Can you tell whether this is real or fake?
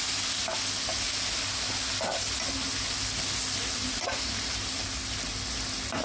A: real